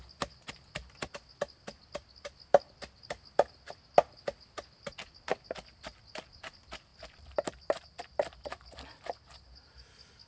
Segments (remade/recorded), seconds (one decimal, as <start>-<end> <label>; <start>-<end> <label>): 0.0-10.3 recorded